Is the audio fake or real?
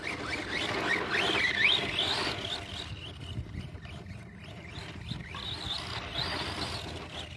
real